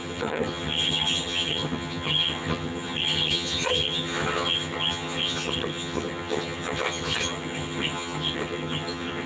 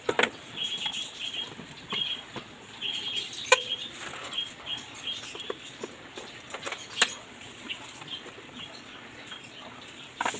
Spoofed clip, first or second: first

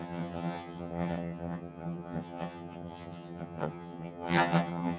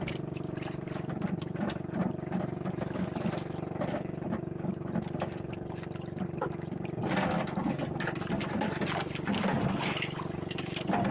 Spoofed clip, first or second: first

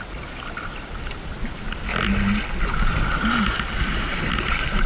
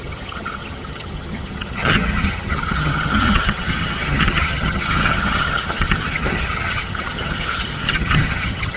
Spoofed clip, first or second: second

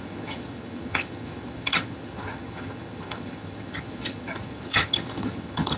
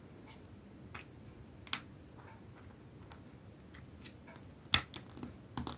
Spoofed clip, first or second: first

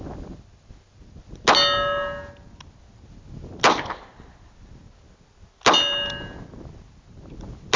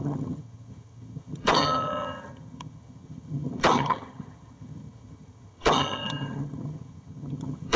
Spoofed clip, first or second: second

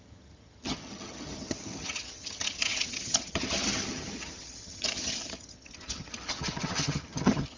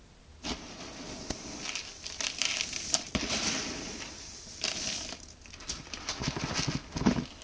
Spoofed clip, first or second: first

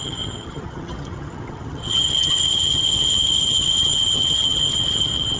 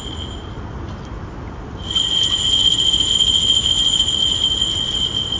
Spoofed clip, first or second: first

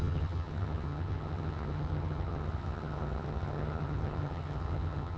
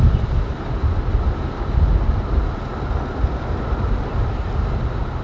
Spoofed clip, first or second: first